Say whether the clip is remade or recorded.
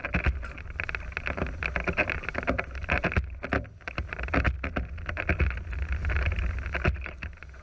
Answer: recorded